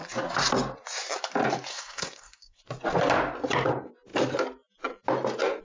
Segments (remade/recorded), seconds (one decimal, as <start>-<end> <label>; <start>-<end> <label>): 0.0-1.7 recorded; 1.7-2.6 remade; 2.6-5.6 recorded